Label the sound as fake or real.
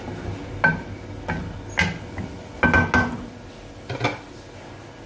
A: real